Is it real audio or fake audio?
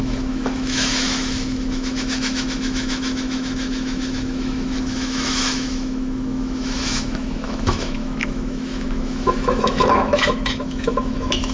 fake